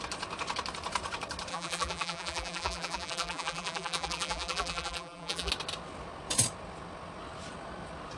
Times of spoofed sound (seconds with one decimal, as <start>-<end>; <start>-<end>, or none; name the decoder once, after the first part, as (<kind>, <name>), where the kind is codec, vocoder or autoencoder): 1.5-5.5 (vocoder, BigVGAN v2)

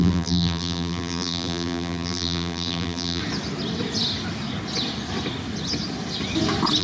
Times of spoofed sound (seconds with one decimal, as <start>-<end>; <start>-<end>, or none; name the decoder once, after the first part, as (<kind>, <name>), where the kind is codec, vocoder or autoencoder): 0.0-3.2 (vocoder, BigVGAN v2)

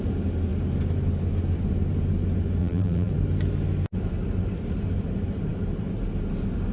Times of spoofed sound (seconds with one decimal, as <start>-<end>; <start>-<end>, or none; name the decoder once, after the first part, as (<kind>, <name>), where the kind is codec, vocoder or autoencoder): 2.6-3.1 (vocoder, BigVGAN v2)

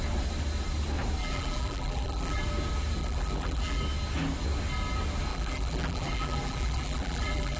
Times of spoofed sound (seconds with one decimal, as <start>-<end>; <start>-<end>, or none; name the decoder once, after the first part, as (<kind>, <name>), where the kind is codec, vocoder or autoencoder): 1.2-2.4 (vocoder, BigVGAN v2); 3.0-3.8; 5.3-7.6

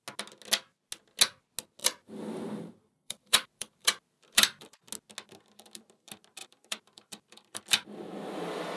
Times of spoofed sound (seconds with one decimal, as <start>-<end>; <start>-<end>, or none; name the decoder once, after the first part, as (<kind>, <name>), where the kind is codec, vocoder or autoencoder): 1.8-4.9 (vocoder, BigVGAN v2); 6.4-7.6